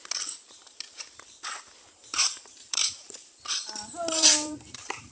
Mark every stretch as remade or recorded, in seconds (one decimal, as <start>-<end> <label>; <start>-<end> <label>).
0.0-2.0 recorded; 2.0-5.1 remade